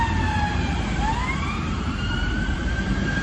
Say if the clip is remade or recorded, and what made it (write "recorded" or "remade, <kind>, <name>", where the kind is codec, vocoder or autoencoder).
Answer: remade, vocoder, BigVGAN v2